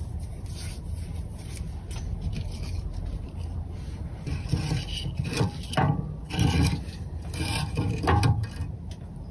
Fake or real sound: real